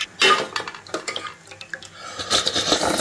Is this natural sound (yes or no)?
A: yes